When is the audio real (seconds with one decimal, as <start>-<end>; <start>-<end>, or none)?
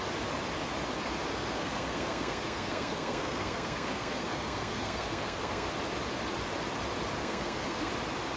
0.0-1.3; 5.7-7.2; 7.9-8.4